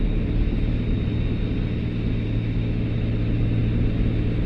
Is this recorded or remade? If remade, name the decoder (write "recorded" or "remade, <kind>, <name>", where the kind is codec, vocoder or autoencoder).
recorded